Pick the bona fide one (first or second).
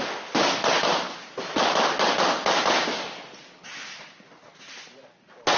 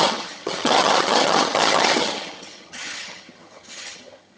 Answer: first